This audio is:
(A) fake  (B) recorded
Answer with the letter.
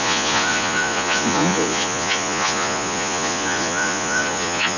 A